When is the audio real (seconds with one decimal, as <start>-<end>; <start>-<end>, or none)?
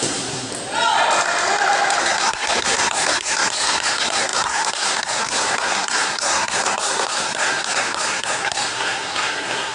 0.5-2.0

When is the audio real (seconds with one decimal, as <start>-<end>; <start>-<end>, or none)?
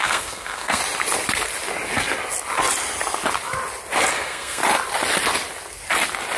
0.8-4.1; 4.6-6.4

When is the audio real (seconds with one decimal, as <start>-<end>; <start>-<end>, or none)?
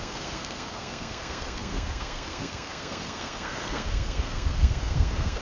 none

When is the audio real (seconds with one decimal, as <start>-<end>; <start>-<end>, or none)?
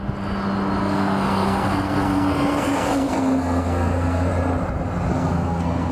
0.0-0.8; 4.3-5.1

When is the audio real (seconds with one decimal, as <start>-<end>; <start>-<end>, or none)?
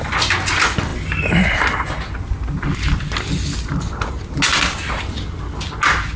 0.0-6.2